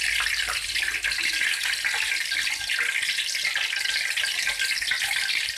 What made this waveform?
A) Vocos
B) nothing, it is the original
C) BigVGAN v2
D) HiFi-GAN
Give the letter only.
B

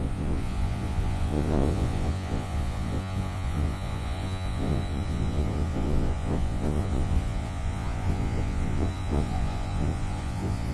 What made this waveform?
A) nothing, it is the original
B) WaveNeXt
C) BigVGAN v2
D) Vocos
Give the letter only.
D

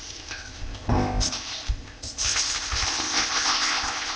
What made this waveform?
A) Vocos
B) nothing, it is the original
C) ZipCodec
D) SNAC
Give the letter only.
C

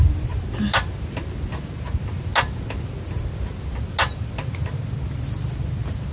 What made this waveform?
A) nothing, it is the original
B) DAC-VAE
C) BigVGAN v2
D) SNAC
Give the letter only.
A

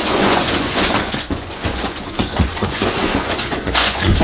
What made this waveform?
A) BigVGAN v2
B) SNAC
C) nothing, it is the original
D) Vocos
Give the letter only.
D